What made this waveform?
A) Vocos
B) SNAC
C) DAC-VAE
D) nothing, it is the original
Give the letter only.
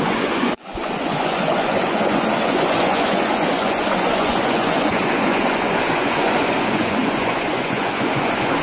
A